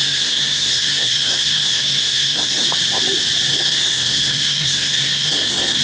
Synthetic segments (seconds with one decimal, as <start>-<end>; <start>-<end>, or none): 0.0-2.7; 3.5-5.8